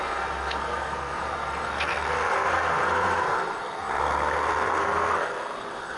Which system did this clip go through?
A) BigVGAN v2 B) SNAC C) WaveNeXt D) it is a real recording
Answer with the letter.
B